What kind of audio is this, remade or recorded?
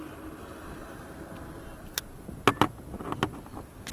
recorded